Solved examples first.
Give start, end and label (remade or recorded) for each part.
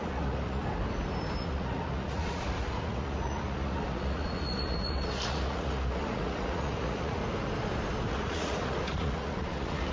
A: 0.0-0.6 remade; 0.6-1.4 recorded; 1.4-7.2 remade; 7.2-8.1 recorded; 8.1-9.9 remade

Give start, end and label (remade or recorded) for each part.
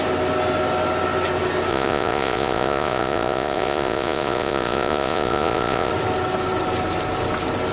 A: 0.0-1.7 recorded; 1.7-5.9 remade; 5.9-7.7 recorded